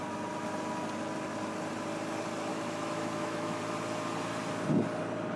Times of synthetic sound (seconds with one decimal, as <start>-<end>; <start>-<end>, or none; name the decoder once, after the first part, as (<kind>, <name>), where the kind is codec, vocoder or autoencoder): 2.5-3.6 (autoencoder, DAC-VAE)